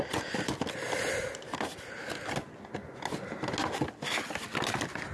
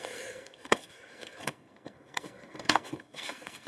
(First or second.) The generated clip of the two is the second